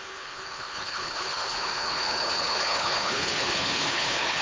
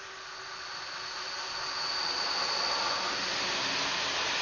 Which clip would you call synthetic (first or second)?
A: first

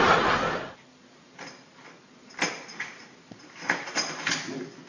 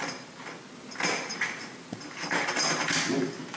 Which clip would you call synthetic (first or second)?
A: first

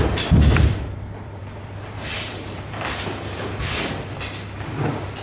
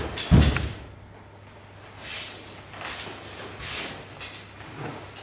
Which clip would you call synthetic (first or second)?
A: first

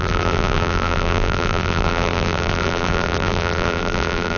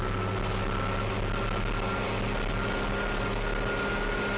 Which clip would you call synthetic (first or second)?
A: first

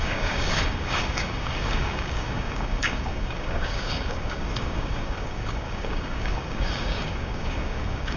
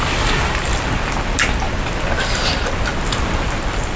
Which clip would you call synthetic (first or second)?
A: first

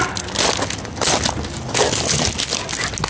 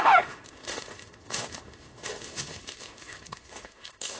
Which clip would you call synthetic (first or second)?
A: second